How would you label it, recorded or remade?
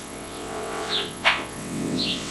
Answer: remade